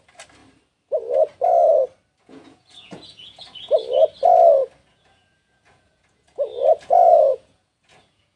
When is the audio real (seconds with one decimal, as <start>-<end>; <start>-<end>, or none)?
0.0-2.2; 3.8-4.9